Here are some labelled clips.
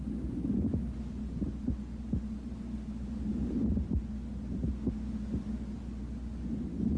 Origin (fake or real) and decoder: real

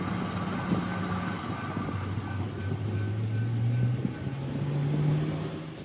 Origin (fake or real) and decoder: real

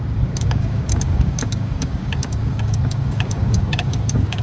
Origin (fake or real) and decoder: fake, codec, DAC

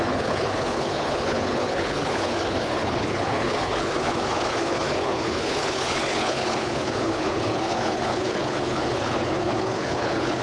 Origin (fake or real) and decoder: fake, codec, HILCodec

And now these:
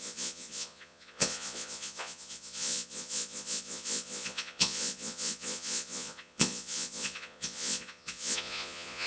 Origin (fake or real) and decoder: fake, vocoder, Vocos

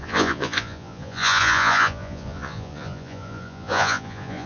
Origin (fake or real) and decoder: fake, vocoder, Vocos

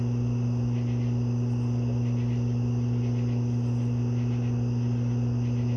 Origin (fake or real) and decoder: real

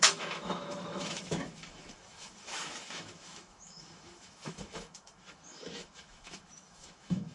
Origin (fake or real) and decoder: fake, autoencoder, DAC-VAE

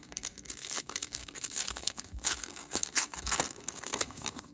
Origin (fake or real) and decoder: fake, codec, SNAC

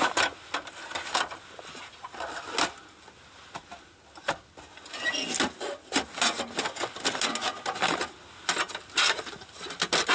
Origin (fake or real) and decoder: real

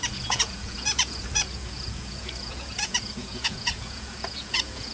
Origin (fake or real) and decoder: fake, vocoder, Vocos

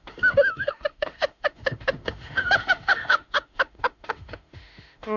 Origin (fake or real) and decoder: fake, autoencoder, DAC-VAE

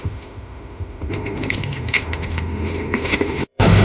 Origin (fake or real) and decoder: fake, autoencoder, DAC-VAE